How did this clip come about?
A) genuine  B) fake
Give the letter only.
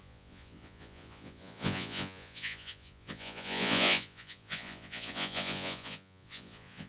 B